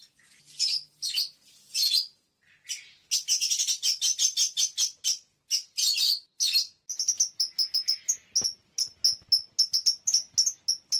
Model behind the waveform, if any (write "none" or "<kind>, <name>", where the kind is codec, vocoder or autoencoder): none